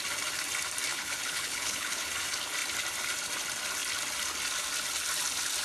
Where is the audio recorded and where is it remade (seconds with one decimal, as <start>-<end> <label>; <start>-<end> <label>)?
0.0-0.9 recorded; 0.9-2.1 remade; 2.1-5.6 recorded